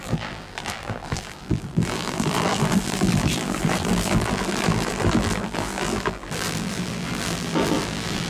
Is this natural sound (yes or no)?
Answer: no